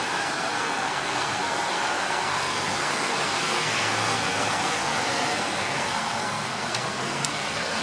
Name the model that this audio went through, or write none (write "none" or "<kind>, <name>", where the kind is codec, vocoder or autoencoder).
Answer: codec, SNAC